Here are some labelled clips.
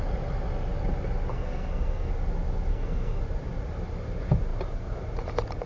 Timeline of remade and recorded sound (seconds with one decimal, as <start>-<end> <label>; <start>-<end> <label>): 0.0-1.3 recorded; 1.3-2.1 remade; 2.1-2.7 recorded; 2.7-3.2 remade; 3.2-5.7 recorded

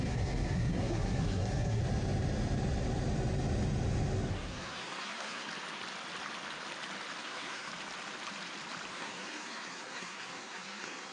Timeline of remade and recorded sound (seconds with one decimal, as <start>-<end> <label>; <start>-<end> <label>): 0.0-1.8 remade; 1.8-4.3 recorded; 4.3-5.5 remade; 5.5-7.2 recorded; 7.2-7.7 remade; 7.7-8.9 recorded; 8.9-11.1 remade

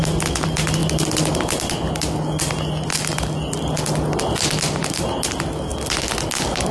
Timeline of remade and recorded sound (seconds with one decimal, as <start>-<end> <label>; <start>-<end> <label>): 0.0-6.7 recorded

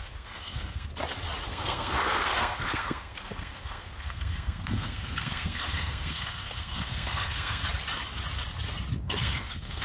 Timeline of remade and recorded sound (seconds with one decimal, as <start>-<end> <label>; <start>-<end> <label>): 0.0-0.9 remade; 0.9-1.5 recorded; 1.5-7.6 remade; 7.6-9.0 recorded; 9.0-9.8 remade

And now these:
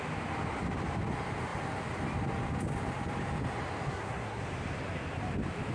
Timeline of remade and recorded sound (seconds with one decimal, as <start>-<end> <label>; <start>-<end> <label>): 0.0-3.9 recorded; 3.9-4.4 remade; 4.4-5.7 recorded